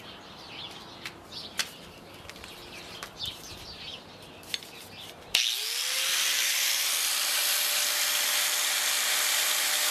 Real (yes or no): yes